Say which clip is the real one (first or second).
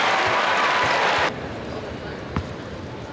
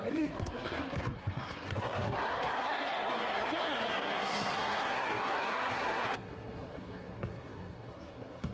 first